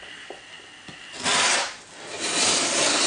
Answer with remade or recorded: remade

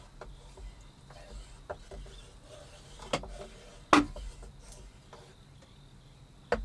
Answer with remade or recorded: recorded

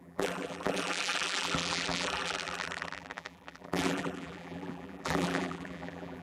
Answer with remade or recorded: remade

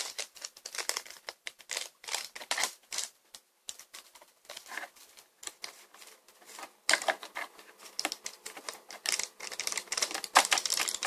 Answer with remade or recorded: remade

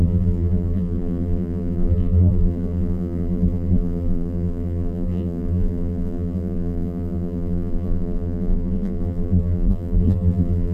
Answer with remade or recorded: remade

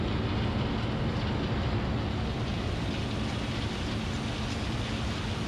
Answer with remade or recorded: recorded